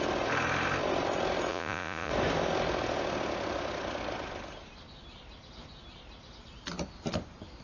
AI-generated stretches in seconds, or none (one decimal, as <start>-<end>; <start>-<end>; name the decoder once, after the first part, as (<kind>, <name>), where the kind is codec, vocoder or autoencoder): 1.5-2.1 (vocoder, Vocos)